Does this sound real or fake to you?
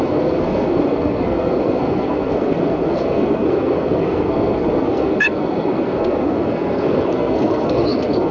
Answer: fake